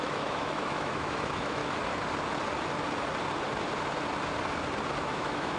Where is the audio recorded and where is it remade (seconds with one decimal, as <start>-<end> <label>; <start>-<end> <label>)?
0.0-1.6 remade; 1.6-5.0 recorded; 5.0-5.6 remade